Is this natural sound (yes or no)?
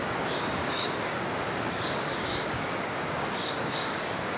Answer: no